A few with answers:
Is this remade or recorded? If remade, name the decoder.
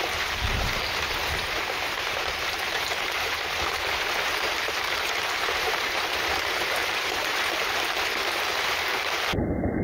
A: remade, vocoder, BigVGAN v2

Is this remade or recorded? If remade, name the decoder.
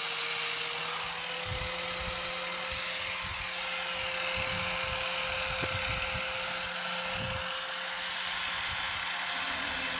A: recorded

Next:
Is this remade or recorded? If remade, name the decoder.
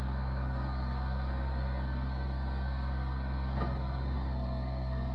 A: remade, codec, SNAC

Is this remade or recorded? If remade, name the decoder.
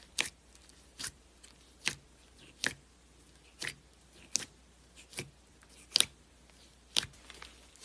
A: recorded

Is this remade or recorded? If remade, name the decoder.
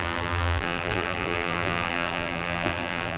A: remade, vocoder, BigVGAN v2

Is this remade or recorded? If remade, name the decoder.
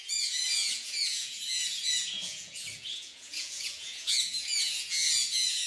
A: remade, vocoder, Vocos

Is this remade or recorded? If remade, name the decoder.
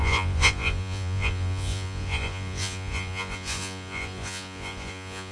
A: remade, vocoder, Vocos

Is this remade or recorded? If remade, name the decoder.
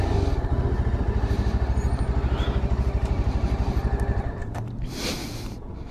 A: recorded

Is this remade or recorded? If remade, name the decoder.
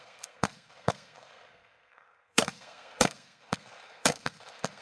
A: remade, codec, SNAC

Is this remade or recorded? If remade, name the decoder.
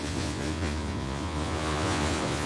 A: remade, vocoder, Vocos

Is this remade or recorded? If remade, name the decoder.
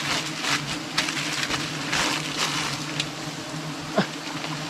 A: recorded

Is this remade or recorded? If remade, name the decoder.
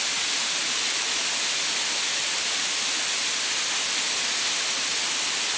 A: recorded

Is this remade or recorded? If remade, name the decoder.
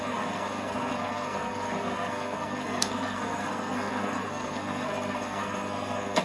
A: remade, codec, SNAC